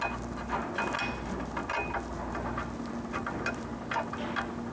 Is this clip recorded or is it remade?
recorded